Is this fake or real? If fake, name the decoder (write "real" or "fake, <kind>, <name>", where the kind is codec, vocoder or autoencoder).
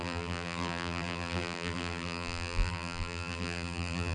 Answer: fake, vocoder, BigVGAN v2